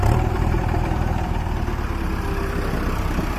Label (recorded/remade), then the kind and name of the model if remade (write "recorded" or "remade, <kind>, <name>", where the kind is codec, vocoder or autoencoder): remade, vocoder, BigVGAN v2